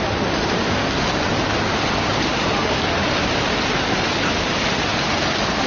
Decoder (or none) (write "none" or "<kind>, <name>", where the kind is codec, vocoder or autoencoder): none